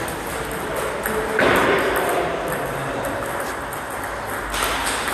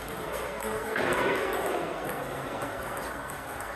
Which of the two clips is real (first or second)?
first